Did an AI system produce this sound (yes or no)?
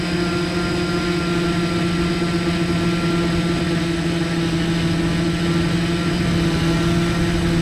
no